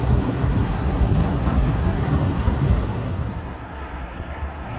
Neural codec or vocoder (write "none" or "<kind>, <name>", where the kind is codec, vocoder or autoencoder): codec, SNAC